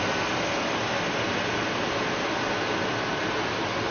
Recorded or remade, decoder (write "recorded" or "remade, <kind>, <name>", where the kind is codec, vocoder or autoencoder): recorded